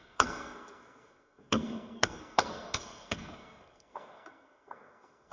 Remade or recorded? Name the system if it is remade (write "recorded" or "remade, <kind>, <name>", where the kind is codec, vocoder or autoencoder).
remade, codec, SNAC